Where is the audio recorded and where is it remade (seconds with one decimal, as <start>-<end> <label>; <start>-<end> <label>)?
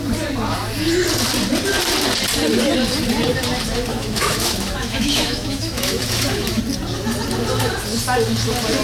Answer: 0.0-3.9 recorded; 3.9-6.6 remade; 6.6-8.8 recorded